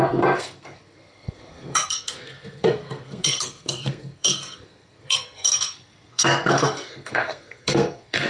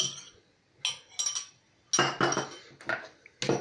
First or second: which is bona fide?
second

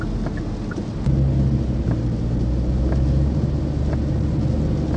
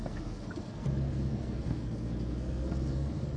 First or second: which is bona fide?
first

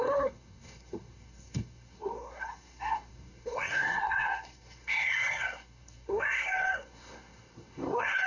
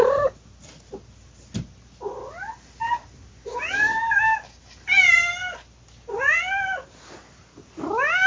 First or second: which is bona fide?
second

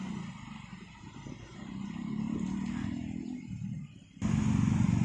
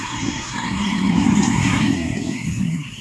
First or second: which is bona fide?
first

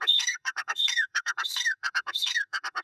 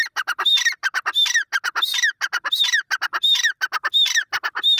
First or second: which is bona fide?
second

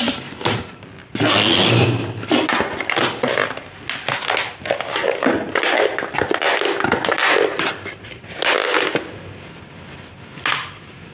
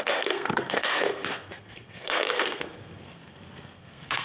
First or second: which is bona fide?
first